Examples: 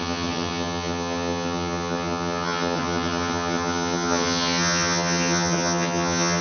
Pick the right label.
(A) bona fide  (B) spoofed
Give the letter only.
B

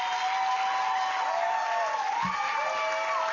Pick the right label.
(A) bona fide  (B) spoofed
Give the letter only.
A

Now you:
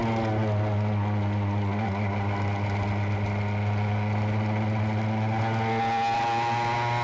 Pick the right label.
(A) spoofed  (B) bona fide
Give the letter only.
B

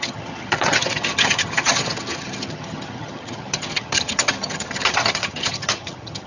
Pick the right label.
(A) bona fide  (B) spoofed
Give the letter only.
B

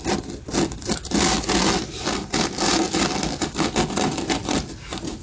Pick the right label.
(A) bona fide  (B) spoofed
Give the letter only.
A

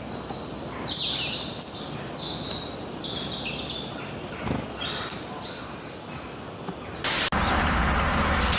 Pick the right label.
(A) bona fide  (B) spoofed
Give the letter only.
A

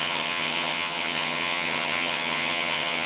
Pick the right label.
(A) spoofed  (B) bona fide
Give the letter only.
A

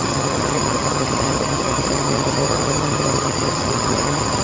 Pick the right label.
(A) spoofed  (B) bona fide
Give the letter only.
A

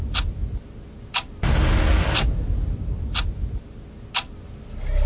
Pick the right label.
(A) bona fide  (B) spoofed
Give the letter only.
A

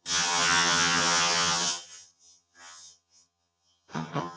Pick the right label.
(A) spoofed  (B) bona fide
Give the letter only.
A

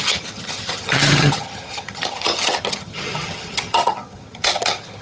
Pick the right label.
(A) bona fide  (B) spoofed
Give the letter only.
B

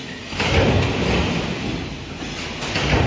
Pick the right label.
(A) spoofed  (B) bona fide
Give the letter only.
B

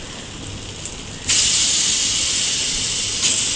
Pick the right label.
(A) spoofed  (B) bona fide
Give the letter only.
B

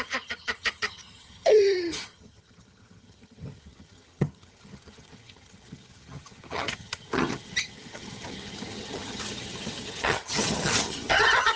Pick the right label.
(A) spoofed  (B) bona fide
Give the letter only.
A